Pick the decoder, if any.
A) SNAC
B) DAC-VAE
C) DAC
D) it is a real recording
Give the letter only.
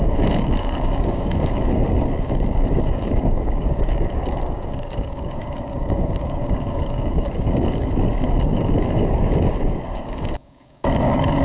C